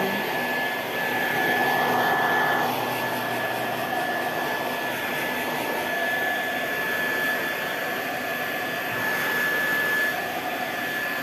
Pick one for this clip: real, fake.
real